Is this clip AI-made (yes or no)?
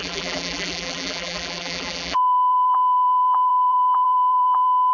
yes